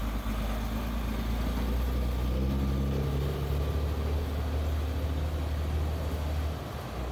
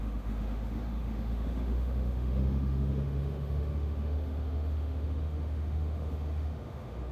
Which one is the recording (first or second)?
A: first